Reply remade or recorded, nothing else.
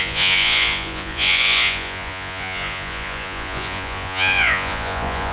remade